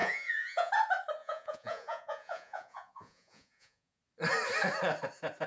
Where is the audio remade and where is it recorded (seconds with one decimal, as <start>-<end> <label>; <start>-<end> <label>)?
0.0-0.7 remade; 0.7-1.2 recorded; 1.2-4.0 remade; 4.0-5.5 recorded